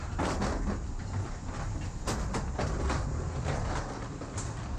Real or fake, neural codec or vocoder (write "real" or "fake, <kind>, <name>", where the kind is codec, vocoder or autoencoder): real